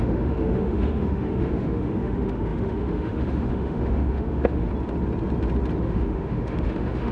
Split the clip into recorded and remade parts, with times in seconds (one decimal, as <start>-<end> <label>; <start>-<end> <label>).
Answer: 0.0-4.7 remade; 4.7-5.8 recorded; 5.8-7.1 remade